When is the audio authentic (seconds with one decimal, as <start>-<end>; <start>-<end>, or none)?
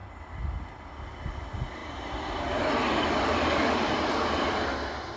0.0-5.2